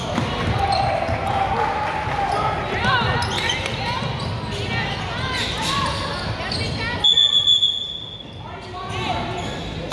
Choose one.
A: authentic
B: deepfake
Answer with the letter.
A